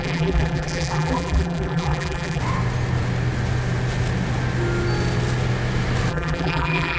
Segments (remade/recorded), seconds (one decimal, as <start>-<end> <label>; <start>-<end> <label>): 0.0-2.4 remade; 2.4-6.1 recorded; 6.1-7.0 remade